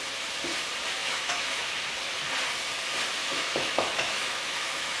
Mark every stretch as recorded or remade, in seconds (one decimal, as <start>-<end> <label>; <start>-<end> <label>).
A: 0.0-1.0 recorded; 1.0-1.8 remade; 1.8-3.2 recorded; 3.2-5.0 remade